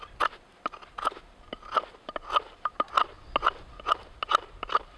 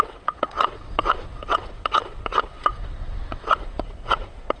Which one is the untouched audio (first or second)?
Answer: first